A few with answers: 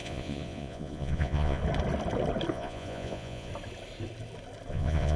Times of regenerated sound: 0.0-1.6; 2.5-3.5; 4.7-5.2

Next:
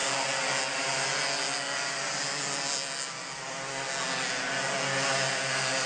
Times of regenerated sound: none

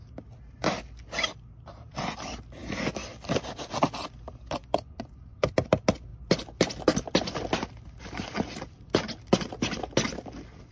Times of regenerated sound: 4.6-5.5

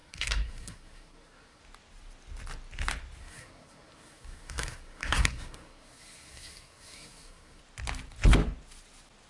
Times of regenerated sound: 0.0-1.6; 3.2-7.6

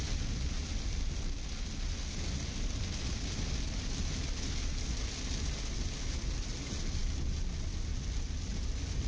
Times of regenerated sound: none